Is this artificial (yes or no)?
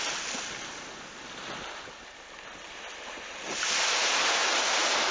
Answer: no